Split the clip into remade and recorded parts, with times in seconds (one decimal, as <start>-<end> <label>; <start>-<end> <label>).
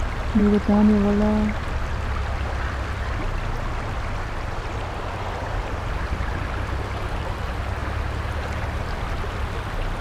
0.0-10.0 recorded